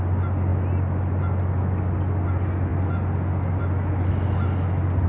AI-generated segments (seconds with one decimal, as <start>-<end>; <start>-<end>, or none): none